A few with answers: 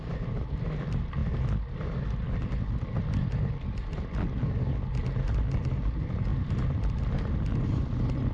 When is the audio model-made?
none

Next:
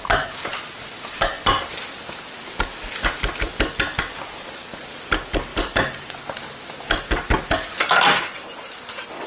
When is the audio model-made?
5.5-6.2 (vocoder, BigVGAN v2); 7.7-9.3

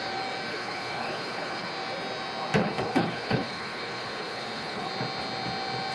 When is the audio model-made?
0.5-1.7 (codec, HILCodec); 2.6-4.9

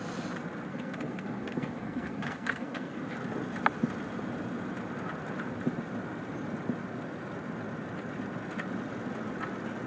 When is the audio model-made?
0.7-3.0 (codec, SNAC)

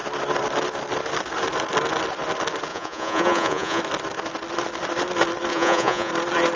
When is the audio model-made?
2.7-3.8 (vocoder, Vocos); 5.5-6.1

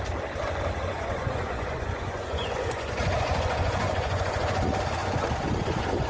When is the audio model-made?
0.9-4.6 (vocoder, Vocos); 5.0-6.1